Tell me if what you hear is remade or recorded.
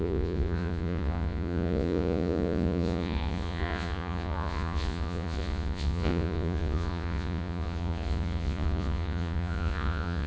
remade